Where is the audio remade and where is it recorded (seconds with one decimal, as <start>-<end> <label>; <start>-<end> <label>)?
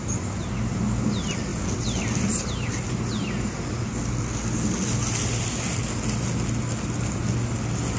0.0-8.0 recorded